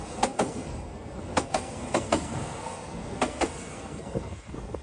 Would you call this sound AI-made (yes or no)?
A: yes